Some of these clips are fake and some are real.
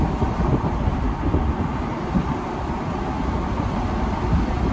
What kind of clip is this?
real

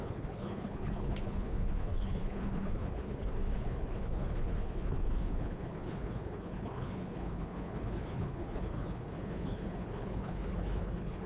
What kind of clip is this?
fake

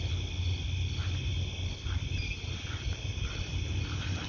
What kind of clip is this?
real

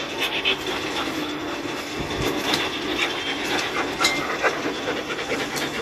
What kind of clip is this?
real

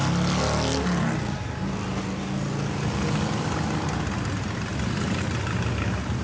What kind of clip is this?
real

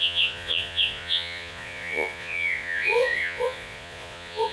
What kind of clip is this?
fake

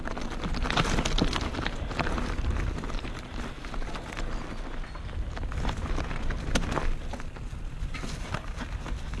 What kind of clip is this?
real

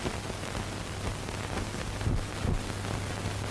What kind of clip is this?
fake